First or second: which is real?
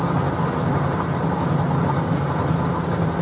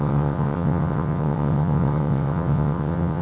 first